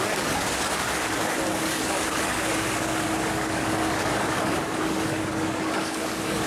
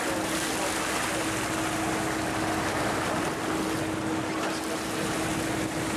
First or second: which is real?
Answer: second